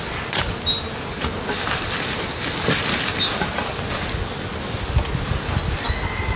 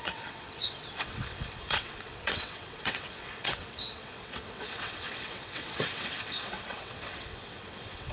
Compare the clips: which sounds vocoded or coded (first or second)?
second